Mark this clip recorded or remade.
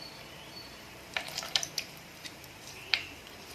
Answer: remade